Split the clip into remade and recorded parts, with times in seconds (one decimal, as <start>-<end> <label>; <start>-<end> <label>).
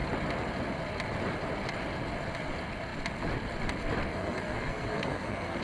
0.0-4.1 recorded; 4.1-5.6 remade